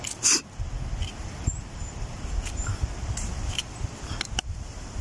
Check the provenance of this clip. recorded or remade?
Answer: recorded